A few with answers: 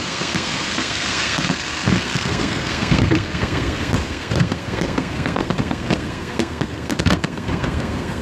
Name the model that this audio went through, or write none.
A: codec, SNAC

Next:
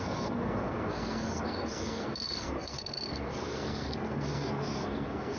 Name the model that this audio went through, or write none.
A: codec, SNAC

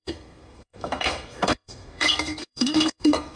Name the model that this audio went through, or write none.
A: codec, SNAC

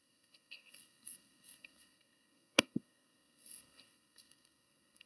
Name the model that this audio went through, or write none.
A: codec, SNAC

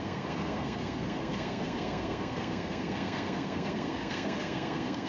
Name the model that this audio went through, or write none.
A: codec, SNAC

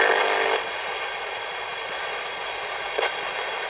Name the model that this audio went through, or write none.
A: none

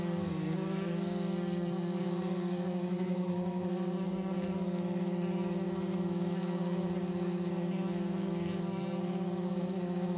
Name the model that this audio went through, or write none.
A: codec, SNAC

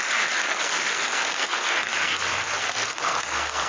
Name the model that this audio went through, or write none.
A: codec, SNAC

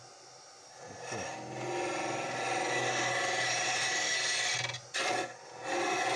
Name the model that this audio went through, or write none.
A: none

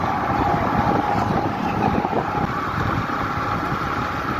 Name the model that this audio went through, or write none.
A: none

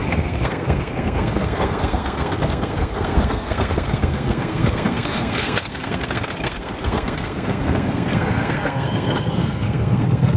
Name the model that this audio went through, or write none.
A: codec, SNAC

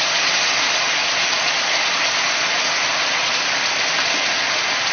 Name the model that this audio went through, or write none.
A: none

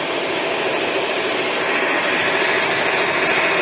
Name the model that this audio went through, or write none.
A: none